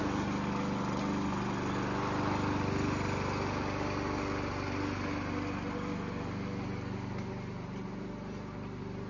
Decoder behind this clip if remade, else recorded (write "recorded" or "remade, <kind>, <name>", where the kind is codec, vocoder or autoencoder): recorded